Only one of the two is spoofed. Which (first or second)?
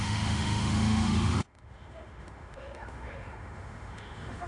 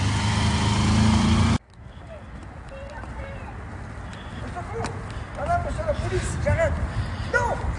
first